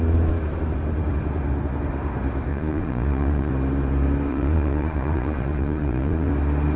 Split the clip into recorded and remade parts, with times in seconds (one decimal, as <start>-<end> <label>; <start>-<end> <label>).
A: 0.0-2.5 recorded; 2.5-3.5 remade; 3.5-4.3 recorded; 4.3-6.3 remade; 6.3-6.8 recorded